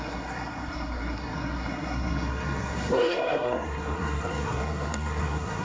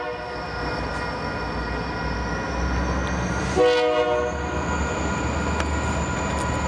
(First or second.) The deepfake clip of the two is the first